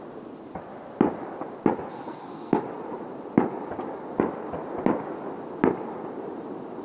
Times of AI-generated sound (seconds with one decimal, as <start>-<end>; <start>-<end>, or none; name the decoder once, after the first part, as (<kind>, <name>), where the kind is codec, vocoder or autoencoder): 1.9-2.6 (codec, SNAC)

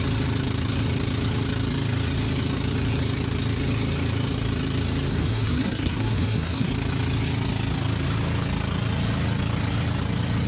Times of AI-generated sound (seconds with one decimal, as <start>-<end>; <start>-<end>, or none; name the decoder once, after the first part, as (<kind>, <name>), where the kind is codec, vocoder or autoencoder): 5.1-6.7 (codec, SNAC)

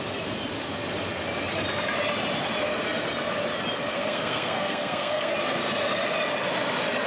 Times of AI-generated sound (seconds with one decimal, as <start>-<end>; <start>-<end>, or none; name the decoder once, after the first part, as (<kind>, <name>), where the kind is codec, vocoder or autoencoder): 3.9-5.3 (codec, SNAC)

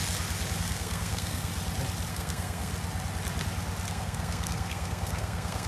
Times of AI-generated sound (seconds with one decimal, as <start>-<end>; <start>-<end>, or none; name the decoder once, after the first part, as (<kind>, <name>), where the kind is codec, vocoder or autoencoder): 0.6-1.5 (codec, SNAC); 2.1-2.7; 3.9-5.7

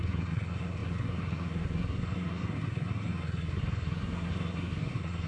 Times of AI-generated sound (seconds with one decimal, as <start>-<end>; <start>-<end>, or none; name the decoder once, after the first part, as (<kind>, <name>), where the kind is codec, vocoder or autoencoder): 0.0-5.3 (codec, SNAC)

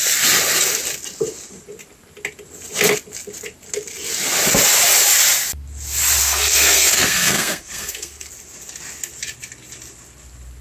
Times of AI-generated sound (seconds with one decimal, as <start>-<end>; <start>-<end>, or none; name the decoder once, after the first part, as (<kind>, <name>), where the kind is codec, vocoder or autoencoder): 6.2-8.3 (codec, SNAC)

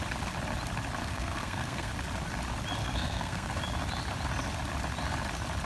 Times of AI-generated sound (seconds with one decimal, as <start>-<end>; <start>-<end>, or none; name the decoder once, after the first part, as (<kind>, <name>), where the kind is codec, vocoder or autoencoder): 1.0-1.9 (codec, SNAC); 2.8-3.6

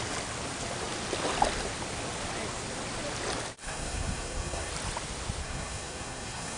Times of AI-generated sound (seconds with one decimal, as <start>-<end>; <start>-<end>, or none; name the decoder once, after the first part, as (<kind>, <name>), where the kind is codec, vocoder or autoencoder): 3.6-4.7 (codec, SNAC); 5.4-6.6